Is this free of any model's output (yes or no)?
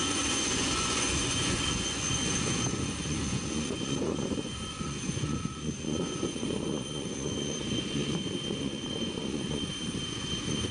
no